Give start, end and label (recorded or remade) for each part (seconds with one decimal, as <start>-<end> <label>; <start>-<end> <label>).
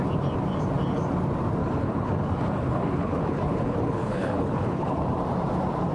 0.0-1.6 recorded; 1.6-5.1 remade; 5.1-5.9 recorded